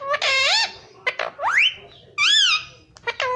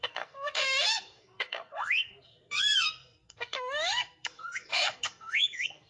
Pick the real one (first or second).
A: first